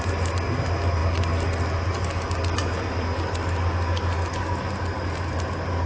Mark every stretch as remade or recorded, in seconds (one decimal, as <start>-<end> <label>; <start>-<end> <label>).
0.0-5.9 recorded